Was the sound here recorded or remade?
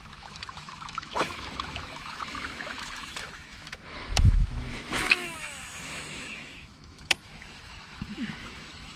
remade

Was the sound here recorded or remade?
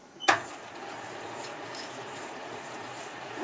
remade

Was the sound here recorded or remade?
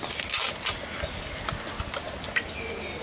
recorded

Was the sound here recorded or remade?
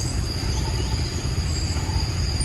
remade